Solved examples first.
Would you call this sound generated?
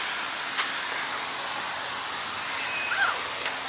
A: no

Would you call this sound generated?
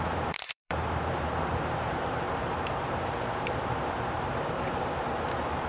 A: yes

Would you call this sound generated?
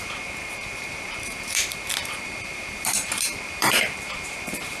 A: yes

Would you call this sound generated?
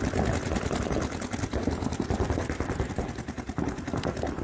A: no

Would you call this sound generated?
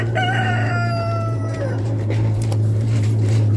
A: yes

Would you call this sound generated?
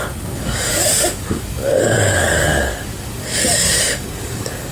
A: yes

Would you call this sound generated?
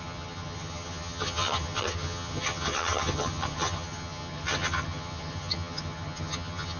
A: yes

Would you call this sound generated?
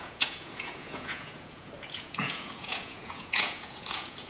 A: yes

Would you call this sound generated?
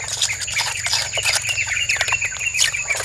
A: no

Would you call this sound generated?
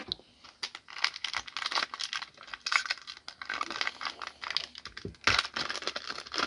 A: no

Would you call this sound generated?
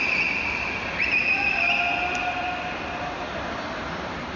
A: no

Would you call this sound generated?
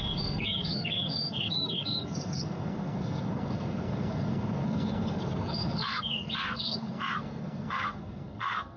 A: yes